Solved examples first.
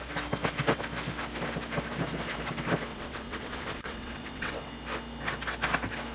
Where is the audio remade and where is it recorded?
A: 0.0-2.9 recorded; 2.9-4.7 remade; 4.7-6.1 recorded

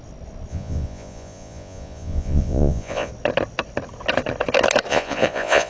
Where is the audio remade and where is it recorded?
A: 0.0-0.5 recorded; 0.5-3.1 remade; 3.1-4.9 recorded; 4.9-5.7 remade

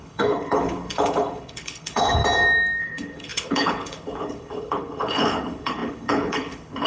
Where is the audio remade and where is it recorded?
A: 0.0-2.2 remade; 2.2-2.8 recorded; 2.8-6.9 remade

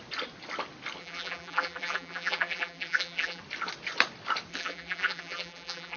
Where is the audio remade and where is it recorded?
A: 0.0-1.0 recorded; 1.0-3.4 remade; 3.4-4.5 recorded; 4.5-6.0 remade